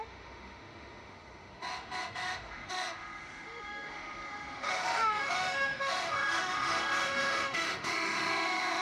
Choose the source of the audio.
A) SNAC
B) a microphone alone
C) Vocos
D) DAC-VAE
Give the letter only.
D